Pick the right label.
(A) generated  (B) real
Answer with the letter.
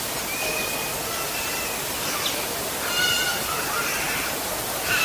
B